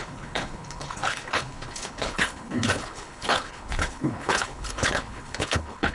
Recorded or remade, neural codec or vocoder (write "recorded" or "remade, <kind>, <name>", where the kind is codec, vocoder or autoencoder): remade, codec, HILCodec